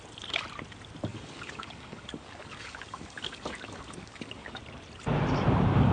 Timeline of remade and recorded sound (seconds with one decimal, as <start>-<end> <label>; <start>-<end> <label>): 0.0-1.1 recorded; 1.1-4.6 remade; 4.6-5.9 recorded

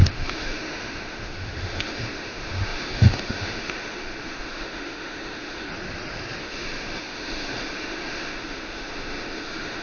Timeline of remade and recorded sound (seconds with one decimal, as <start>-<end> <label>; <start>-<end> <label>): 0.0-5.7 remade; 5.7-6.4 recorded; 6.4-9.8 remade